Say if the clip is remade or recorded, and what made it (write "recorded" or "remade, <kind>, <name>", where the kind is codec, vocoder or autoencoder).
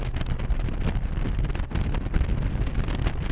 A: recorded